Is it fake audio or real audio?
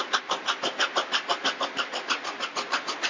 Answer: real